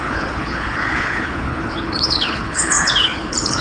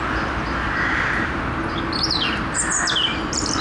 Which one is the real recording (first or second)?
second